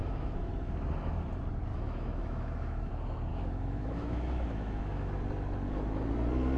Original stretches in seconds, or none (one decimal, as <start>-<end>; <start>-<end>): 0.5-1.7; 2.9-3.3; 5.2-6.6